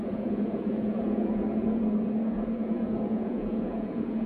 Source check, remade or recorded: remade